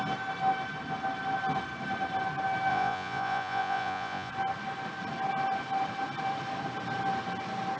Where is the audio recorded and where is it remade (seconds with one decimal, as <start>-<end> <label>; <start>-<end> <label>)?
0.0-2.7 recorded; 2.7-4.3 remade; 4.3-7.8 recorded